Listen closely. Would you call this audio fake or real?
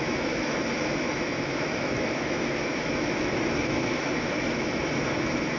fake